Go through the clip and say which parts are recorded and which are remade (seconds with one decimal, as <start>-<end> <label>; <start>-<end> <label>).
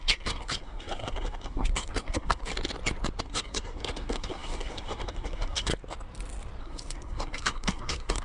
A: 0.0-2.5 remade; 2.5-3.2 recorded; 3.2-5.7 remade; 5.7-6.6 recorded; 6.6-8.2 remade